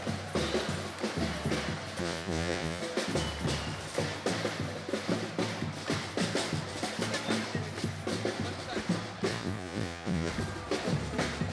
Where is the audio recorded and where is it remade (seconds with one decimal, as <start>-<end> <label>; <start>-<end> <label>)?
0.0-2.0 recorded; 2.0-2.8 remade; 2.8-9.3 recorded; 9.3-10.3 remade; 10.3-11.5 recorded